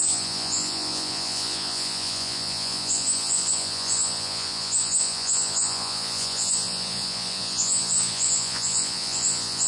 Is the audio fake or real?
fake